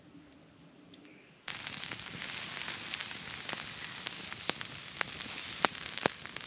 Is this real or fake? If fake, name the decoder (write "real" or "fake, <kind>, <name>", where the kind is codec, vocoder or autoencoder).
real